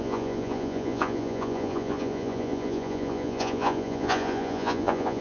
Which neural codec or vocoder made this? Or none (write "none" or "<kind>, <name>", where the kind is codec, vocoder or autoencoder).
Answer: vocoder, Vocos